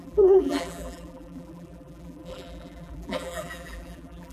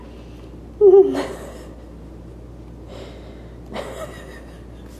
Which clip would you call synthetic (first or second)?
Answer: first